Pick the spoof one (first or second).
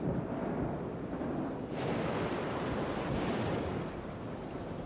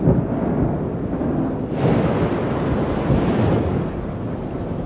first